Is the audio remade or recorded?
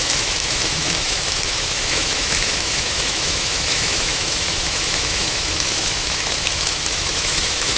remade